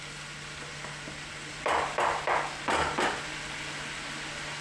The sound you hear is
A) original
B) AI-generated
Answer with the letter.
A